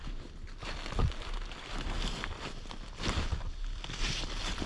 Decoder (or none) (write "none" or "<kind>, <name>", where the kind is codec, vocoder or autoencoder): none